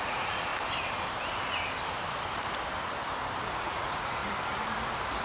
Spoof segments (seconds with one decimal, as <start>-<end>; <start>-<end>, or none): 0.0-0.5; 3.6-4.2